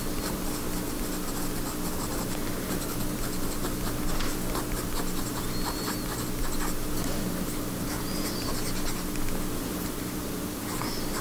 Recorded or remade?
recorded